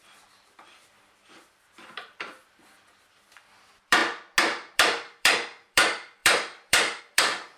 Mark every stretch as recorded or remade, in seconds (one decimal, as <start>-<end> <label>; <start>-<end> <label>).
0.0-4.0 remade; 4.0-4.7 recorded; 4.7-7.6 remade